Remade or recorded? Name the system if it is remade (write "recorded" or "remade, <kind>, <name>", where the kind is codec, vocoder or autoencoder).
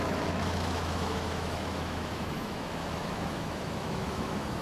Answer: remade, autoencoder, DAC-VAE